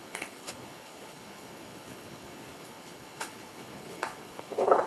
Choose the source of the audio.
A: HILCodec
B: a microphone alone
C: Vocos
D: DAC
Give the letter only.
A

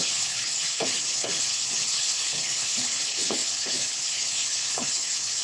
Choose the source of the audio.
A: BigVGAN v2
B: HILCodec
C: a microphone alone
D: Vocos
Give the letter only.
B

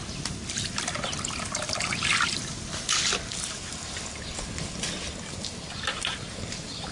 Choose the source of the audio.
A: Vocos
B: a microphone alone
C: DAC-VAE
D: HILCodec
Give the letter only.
B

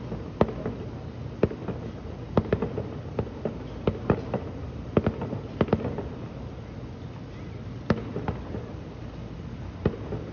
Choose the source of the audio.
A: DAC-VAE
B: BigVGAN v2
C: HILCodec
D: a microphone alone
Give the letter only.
D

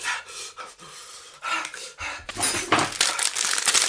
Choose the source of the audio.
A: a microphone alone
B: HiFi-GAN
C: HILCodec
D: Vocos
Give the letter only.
A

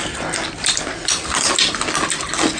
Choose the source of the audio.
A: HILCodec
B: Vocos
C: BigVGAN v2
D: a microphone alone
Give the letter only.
D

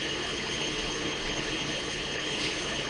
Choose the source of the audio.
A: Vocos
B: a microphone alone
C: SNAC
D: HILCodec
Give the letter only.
D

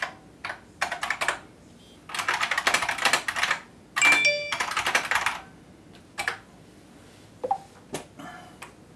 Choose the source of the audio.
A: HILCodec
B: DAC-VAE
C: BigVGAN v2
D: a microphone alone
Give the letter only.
D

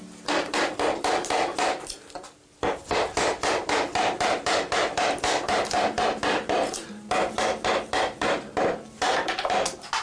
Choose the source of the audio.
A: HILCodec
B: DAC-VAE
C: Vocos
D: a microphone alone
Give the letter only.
D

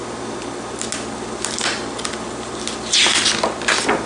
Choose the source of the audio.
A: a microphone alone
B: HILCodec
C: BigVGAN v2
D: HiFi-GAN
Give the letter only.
A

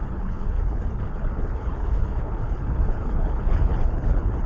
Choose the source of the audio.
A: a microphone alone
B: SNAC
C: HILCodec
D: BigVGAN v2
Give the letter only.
C